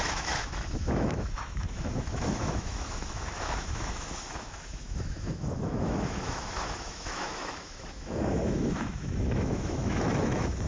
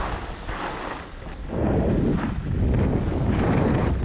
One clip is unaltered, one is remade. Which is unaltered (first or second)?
second